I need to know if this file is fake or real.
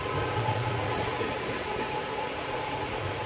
fake